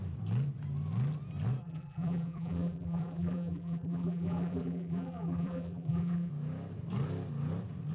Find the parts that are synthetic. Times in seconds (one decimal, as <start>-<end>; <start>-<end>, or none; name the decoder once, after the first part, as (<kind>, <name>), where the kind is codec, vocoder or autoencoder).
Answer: 1.6-6.3 (vocoder, BigVGAN v2)

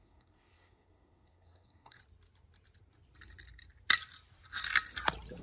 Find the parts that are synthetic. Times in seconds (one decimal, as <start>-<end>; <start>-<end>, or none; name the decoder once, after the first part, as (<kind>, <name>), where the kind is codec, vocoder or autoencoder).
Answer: 0.0-2.0 (codec, SNAC)